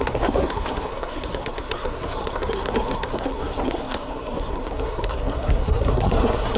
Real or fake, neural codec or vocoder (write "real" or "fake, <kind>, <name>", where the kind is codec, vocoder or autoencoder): fake, codec, SNAC